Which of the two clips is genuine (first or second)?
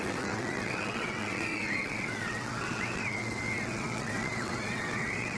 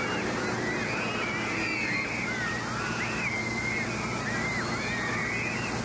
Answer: second